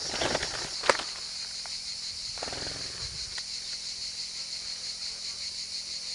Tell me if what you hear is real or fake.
real